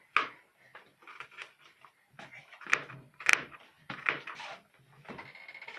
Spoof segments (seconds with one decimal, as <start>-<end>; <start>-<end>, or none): 3.3-5.3